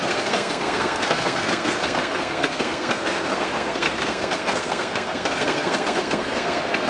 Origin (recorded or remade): remade